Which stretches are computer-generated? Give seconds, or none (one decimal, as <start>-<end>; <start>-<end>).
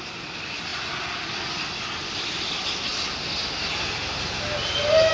none